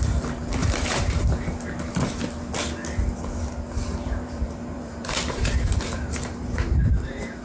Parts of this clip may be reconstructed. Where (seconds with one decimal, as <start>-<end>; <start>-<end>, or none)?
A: 0.6-1.4; 4.0-7.4